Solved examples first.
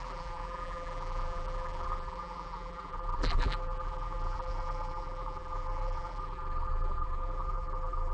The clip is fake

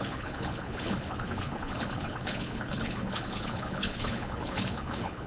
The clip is fake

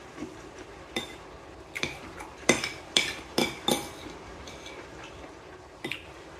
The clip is fake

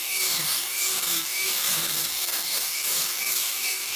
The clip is fake